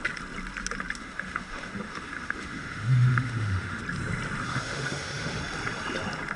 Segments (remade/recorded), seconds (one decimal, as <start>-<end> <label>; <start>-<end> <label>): 0.0-1.0 recorded; 1.0-3.8 remade; 3.8-4.5 recorded; 4.5-5.4 remade; 5.4-6.4 recorded